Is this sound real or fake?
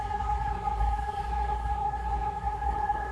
fake